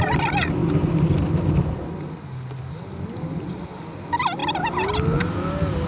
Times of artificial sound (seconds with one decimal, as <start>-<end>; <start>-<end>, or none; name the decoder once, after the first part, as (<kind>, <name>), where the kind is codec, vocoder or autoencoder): none